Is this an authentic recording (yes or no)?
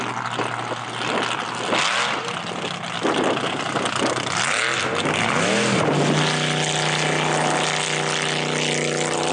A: yes